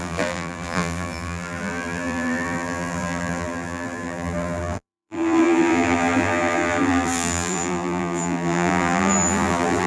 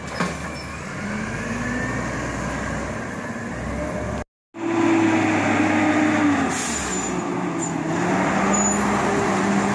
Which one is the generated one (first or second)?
first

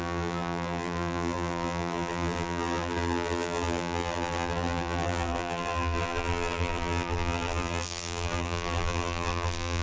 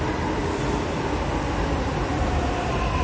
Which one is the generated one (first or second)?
first